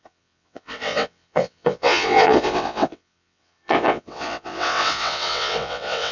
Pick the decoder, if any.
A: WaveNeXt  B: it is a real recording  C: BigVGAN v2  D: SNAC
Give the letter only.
A